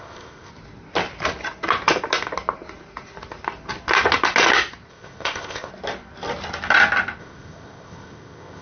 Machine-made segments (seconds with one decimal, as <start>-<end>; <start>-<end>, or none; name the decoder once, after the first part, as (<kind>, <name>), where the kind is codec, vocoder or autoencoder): 0.0-0.5 (codec, ZipCodec); 4.9-5.7; 7.2-8.6